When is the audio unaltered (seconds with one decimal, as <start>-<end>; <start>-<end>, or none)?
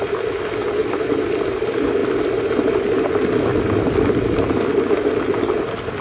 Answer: 0.0-6.0